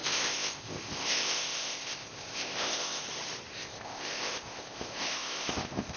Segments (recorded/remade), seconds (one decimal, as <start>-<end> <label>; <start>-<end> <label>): 0.0-3.0 remade; 3.0-3.5 recorded; 3.5-6.0 remade